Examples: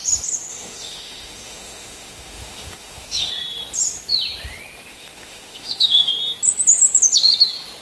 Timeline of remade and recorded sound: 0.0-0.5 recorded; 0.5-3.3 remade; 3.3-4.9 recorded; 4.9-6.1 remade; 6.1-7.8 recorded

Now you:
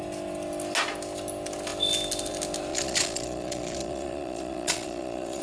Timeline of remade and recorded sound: 0.0-2.7 recorded; 2.7-5.4 remade

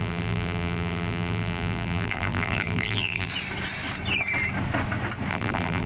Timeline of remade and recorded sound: 0.0-3.3 remade; 3.3-5.3 recorded; 5.3-5.9 remade